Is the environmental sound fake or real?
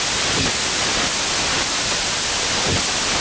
real